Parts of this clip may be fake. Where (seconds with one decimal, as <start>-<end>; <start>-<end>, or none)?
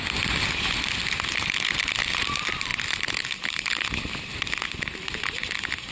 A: none